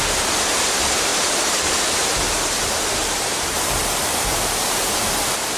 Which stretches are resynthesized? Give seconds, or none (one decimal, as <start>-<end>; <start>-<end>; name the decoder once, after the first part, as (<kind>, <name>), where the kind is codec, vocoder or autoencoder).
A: 1.1-2.6 (vocoder, BigVGAN v2); 3.0-3.8; 4.3-4.9